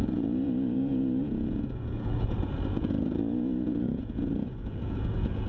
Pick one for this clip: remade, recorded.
remade